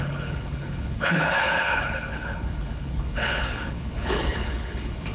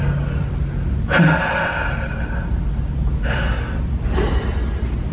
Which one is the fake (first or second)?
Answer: first